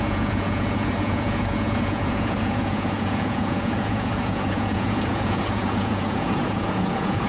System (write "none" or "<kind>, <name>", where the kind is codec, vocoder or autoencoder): vocoder, Vocos